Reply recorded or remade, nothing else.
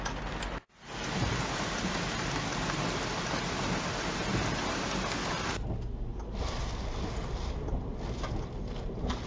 recorded